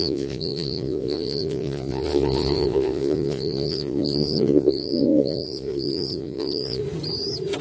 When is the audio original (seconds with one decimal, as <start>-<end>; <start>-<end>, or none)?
6.8-7.6